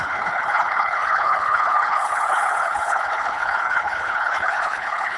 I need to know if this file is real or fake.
fake